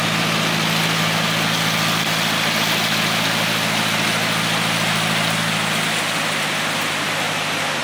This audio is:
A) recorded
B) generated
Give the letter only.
A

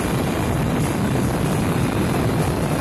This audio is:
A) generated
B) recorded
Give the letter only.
B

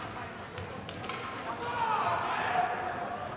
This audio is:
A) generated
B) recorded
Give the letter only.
B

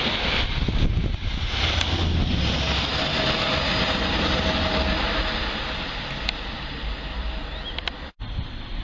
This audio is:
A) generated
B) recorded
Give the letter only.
B